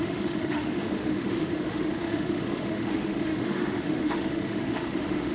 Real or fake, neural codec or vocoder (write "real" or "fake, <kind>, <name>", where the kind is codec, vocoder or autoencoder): fake, autoencoder, DAC-VAE